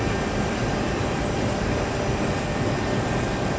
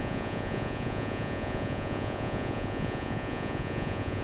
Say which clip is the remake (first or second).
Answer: second